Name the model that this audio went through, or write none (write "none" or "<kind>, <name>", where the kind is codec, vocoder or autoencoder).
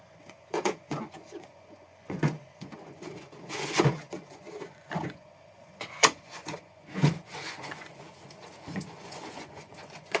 vocoder, Vocos